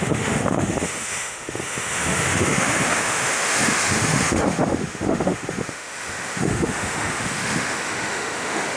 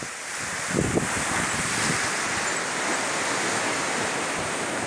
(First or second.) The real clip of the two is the second